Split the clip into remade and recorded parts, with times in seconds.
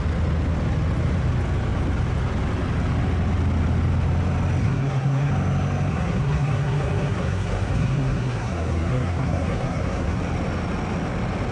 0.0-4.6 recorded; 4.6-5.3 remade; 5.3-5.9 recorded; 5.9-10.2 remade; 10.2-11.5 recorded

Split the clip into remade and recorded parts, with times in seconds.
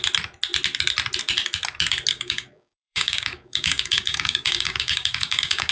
0.0-2.1 recorded; 2.1-5.7 remade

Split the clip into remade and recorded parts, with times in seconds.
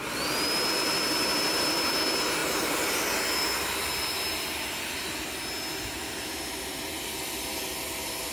0.0-2.4 recorded; 2.4-4.9 remade; 4.9-8.3 recorded